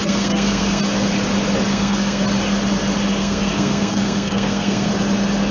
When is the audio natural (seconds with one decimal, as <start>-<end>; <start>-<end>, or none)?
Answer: 0.8-1.7; 2.2-3.2; 4.9-5.5